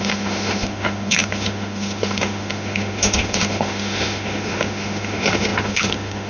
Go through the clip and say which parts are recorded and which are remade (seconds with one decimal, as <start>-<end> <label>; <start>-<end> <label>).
0.0-6.3 remade